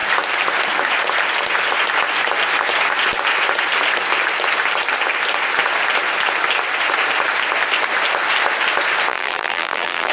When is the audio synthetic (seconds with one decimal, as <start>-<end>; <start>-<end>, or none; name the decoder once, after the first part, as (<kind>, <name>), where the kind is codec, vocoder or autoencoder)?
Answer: 9.1-10.1 (vocoder, BigVGAN v2)